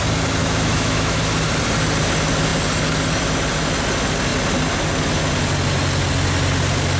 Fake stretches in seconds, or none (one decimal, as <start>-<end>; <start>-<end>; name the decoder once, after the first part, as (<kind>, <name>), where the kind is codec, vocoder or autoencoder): 0.4-1.2 (autoencoder, DAC-VAE)